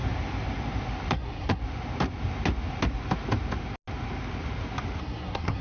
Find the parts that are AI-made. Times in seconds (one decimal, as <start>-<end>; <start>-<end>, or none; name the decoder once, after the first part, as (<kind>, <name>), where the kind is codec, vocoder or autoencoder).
1.1-1.6 (codec, SNAC); 5.0-5.6